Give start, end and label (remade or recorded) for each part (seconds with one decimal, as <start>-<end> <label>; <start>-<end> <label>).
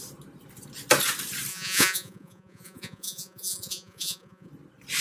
0.0-1.5 recorded; 1.5-4.5 remade; 4.5-5.0 recorded